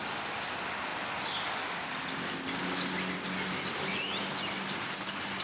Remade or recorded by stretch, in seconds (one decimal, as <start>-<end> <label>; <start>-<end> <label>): 0.0-5.4 recorded